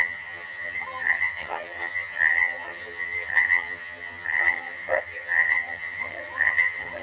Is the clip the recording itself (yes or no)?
no